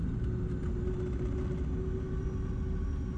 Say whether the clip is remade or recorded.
recorded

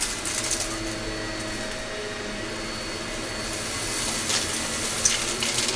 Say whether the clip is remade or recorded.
recorded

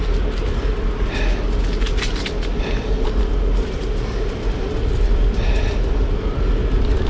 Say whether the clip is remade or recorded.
recorded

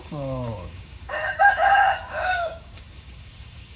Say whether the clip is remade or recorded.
remade